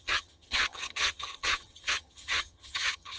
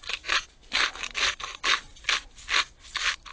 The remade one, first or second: first